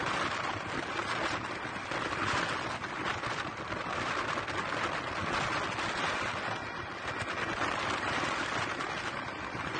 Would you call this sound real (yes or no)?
yes